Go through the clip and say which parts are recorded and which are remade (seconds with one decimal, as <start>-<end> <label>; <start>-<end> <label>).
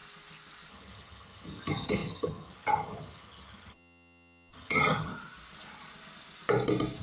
0.0-0.7 recorded; 0.7-5.1 remade; 5.1-7.0 recorded